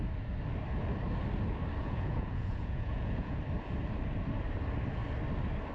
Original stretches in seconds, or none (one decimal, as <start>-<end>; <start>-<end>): 0.0-1.8; 3.4-5.7